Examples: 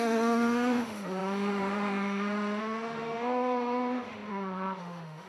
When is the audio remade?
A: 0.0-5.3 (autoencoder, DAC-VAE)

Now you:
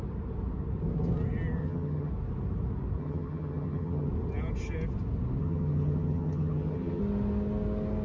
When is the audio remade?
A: 1.6-2.1 (vocoder, HiFi-GAN); 3.0-4.1; 5.4-7.0

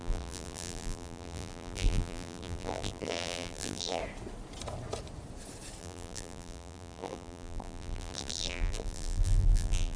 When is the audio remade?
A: 0.0-4.0 (vocoder, BigVGAN v2); 5.8-10.0

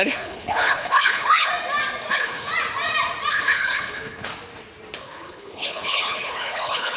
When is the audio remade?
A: 0.0-1.5 (codec, HILCodec); 2.1-2.5; 3.3-4.3; 5.0-7.0

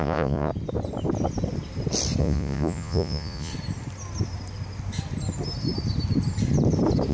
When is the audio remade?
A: 0.0-0.5 (vocoder, Vocos); 2.2-3.5